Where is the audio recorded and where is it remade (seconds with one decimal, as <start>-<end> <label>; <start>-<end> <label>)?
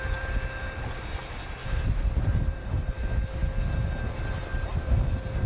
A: 0.0-1.6 recorded; 1.6-3.0 remade; 3.0-5.5 recorded